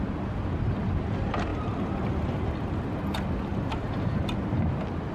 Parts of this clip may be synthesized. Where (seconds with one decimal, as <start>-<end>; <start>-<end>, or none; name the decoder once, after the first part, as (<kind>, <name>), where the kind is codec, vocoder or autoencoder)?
1.5-2.4 (vocoder, BigVGAN v2); 3.5-4.2